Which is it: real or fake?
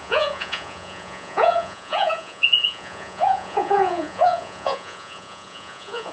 fake